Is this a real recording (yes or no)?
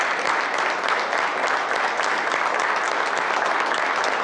yes